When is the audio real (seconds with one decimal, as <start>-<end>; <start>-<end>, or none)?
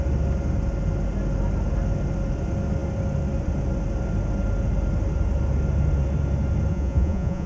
0.0-6.7